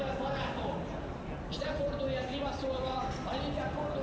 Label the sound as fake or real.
real